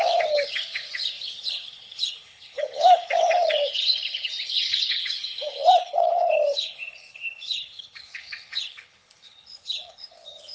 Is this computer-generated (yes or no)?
yes